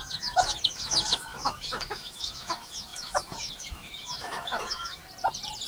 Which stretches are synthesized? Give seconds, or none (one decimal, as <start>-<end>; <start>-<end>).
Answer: 0.0-5.0